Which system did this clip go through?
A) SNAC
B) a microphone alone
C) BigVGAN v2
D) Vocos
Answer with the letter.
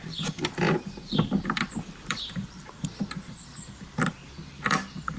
C